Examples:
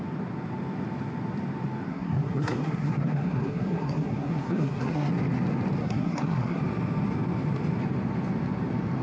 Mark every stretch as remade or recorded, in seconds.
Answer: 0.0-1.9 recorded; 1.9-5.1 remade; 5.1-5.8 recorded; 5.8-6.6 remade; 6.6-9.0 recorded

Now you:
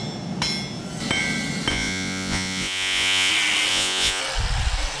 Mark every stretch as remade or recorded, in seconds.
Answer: 0.0-1.7 recorded; 1.7-3.3 remade; 3.3-3.7 recorded; 3.7-4.2 remade; 4.2-5.0 recorded

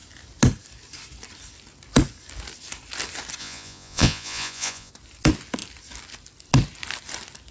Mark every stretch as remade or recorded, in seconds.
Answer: 0.0-3.4 recorded; 3.4-4.9 remade; 4.9-7.5 recorded